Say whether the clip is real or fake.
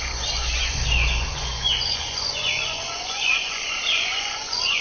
fake